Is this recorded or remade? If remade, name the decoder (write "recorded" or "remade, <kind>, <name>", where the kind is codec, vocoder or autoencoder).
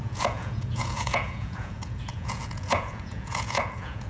remade, vocoder, Vocos